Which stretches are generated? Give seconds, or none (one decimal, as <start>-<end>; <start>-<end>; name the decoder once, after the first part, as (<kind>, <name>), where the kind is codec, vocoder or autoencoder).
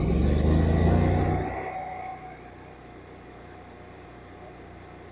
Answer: none